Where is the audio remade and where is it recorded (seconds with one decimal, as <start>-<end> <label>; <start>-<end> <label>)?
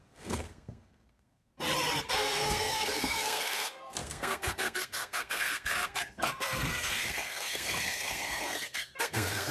0.0-1.5 remade; 1.5-2.1 recorded; 2.1-9.5 remade